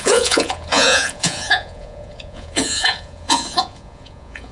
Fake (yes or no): yes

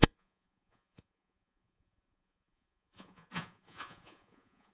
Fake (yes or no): yes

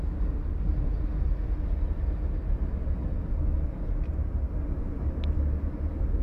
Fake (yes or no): no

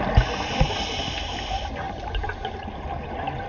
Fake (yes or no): no